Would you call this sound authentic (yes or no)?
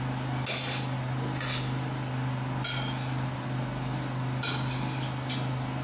yes